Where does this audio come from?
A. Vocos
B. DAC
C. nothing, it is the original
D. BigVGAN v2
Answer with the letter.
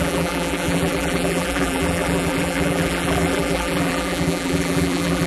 D